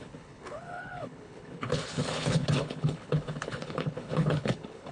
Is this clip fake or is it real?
fake